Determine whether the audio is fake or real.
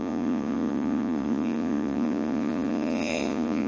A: fake